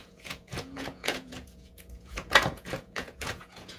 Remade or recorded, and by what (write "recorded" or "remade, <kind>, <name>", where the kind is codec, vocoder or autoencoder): remade, vocoder, Vocos